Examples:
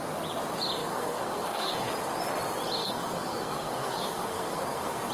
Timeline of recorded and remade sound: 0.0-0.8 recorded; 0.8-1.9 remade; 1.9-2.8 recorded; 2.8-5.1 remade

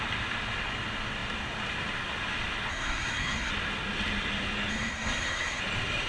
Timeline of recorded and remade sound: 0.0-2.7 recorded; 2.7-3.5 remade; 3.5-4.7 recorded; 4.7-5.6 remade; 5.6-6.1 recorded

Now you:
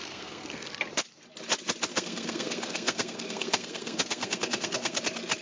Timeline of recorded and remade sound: 0.0-0.7 remade; 0.7-1.9 recorded; 1.9-5.0 remade; 5.0-5.4 recorded

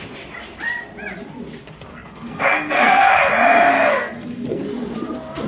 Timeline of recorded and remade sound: 0.0-1.9 recorded; 1.9-3.3 remade; 3.3-3.7 recorded; 3.7-4.6 remade; 4.6-5.5 recorded